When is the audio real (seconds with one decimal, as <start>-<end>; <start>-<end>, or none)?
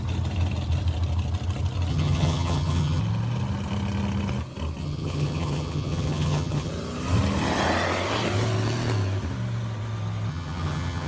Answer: 0.0-1.9; 3.0-4.8; 6.7-10.3